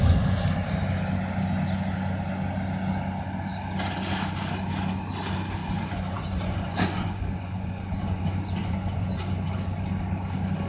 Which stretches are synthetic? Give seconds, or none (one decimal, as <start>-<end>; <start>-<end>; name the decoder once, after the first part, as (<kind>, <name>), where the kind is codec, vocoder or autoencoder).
5.6-8.2 (vocoder, Vocos); 8.6-9.2